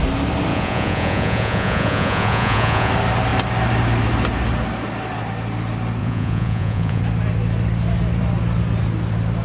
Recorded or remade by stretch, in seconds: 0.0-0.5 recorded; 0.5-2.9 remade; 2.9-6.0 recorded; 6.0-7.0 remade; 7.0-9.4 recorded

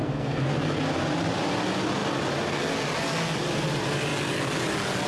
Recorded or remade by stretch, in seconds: 0.0-0.5 remade; 0.5-5.1 recorded

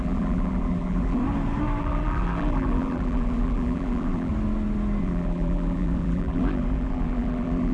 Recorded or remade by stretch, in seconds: 0.0-1.2 remade; 1.2-1.8 recorded; 1.8-4.3 remade; 4.3-5.0 recorded; 5.0-7.7 remade

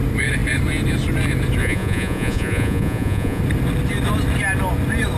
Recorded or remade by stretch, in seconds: 0.0-1.6 recorded; 1.6-3.4 remade; 3.4-5.2 recorded

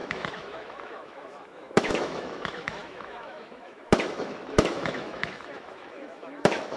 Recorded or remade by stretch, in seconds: 0.0-6.8 remade

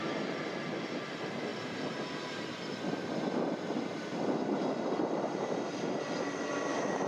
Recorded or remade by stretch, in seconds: 0.0-7.1 recorded

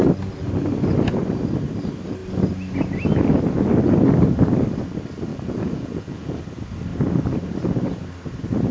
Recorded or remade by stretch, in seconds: 0.0-5.3 recorded; 5.3-6.4 remade; 6.4-8.7 recorded